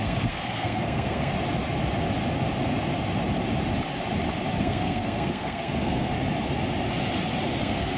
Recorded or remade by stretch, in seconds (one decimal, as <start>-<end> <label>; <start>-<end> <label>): 0.0-1.3 remade; 1.3-4.6 recorded; 4.6-6.1 remade; 6.1-7.6 recorded; 7.6-8.0 remade